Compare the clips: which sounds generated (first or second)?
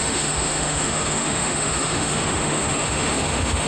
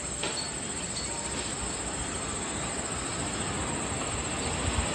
first